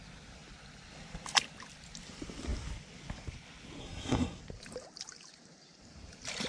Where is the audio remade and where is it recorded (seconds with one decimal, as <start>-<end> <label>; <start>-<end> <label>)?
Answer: 0.0-3.8 recorded; 3.8-4.4 remade; 4.4-6.5 recorded